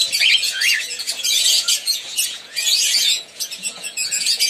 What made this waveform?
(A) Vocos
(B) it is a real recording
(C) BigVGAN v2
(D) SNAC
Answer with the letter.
A